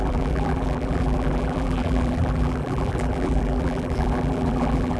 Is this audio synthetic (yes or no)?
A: yes